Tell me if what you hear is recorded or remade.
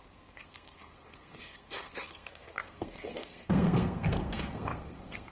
remade